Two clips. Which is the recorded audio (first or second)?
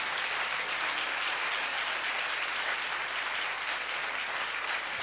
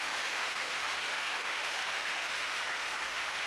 first